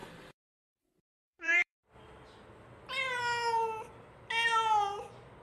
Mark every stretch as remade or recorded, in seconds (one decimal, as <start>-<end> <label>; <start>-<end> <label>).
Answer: 0.0-3.2 remade; 3.2-5.4 recorded